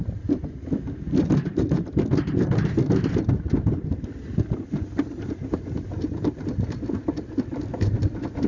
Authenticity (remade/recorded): recorded